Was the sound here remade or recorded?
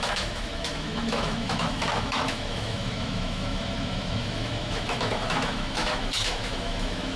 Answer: remade